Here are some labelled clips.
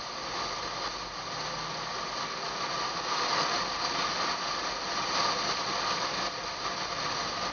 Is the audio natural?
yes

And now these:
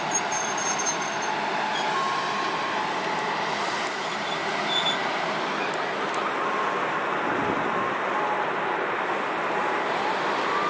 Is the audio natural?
yes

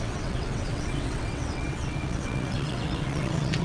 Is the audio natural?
no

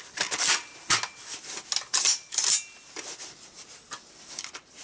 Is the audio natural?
yes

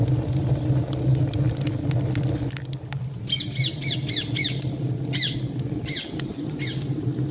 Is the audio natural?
yes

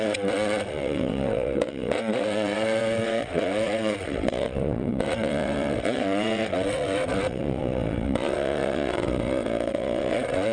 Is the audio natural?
no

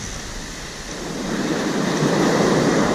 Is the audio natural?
yes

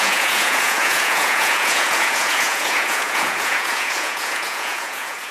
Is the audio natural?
no